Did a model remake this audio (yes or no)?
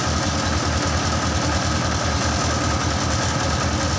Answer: no